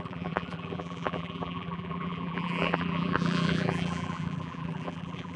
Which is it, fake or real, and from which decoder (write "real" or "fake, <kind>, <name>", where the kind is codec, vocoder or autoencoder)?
fake, vocoder, BigVGAN v2